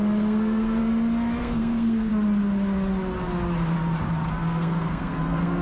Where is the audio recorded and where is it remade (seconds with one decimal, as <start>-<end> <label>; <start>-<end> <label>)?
0.0-0.8 remade; 0.8-1.4 recorded; 1.4-2.1 remade; 2.1-4.3 recorded; 4.3-5.6 remade

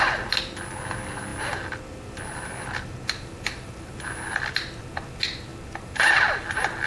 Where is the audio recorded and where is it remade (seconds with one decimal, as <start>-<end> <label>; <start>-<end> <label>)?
0.0-6.9 recorded

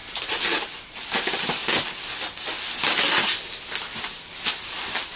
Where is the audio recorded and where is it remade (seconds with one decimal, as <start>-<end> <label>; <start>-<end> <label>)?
0.0-5.2 recorded